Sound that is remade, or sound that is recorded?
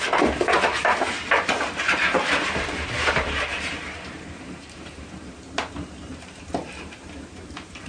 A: remade